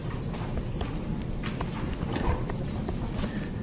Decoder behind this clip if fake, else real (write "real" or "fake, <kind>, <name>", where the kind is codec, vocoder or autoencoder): real